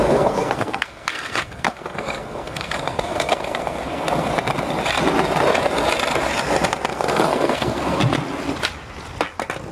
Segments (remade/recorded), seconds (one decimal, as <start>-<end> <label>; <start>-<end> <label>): 0.0-4.3 remade; 4.3-6.9 recorded; 6.9-8.0 remade; 8.0-9.7 recorded